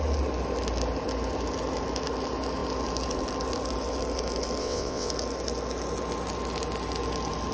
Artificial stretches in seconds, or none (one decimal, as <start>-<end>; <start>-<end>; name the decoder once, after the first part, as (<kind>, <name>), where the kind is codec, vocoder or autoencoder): 4.6-5.1 (vocoder, WaveNeXt)